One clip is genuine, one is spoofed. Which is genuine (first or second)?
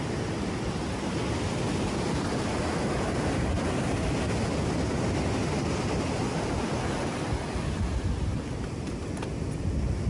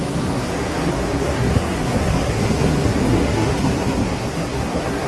first